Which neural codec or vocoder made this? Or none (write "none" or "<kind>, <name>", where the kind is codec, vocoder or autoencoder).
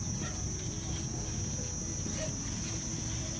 none